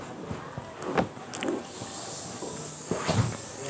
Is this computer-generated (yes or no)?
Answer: no